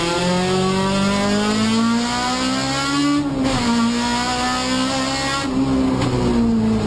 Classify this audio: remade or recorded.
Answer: recorded